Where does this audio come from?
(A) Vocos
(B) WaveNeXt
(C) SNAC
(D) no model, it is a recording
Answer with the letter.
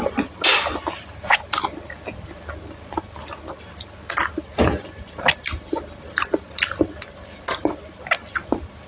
D